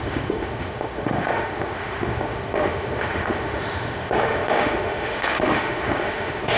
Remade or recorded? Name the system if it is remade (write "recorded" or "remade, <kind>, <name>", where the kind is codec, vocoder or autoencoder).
remade, autoencoder, DAC-VAE